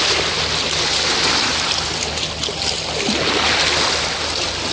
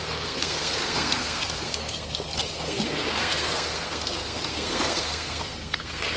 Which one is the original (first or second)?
first